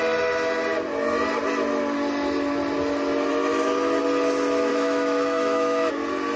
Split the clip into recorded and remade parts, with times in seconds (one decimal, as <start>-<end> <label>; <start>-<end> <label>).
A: 0.0-4.7 recorded; 4.7-5.9 remade; 5.9-6.4 recorded